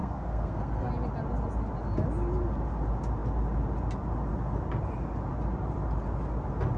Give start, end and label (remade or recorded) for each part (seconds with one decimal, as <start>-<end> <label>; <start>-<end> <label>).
0.0-0.9 remade; 0.9-6.8 recorded